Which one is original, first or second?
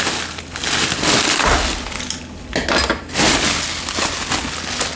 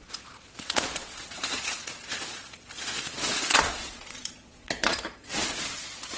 first